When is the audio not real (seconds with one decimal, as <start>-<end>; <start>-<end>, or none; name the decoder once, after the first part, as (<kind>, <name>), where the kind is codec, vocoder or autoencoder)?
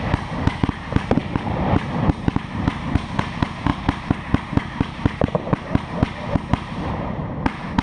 0.0-7.8 (vocoder, BigVGAN v2)